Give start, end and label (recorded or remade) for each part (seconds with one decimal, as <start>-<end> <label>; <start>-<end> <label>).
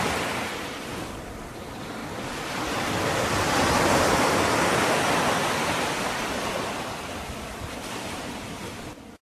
0.0-9.3 recorded